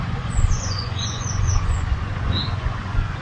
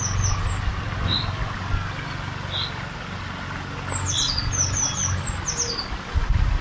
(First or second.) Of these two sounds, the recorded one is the second